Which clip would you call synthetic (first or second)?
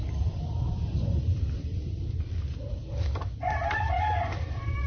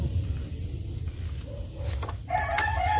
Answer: first